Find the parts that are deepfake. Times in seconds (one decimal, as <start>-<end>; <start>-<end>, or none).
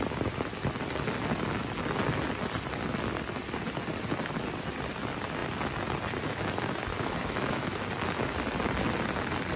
6.9-7.8